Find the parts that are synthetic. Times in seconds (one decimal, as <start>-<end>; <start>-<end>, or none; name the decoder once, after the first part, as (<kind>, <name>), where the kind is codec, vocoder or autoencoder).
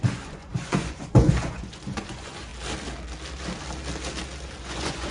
0.0-2.5 (vocoder, Vocos); 4.6-5.1